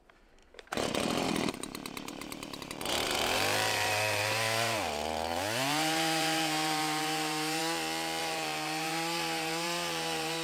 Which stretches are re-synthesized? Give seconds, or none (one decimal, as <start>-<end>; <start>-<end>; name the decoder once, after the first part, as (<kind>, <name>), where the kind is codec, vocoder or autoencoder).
0.0-7.6 (vocoder, BigVGAN v2); 8.2-10.4

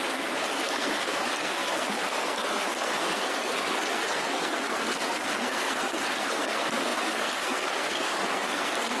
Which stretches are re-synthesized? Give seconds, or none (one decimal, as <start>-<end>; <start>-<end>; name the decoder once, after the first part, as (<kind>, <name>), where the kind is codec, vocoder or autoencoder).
0.0-9.0 (codec, SNAC)